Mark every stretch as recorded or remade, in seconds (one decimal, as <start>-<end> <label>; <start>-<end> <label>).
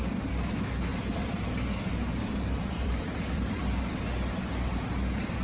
0.0-0.9 recorded; 0.9-3.5 remade; 3.5-5.4 recorded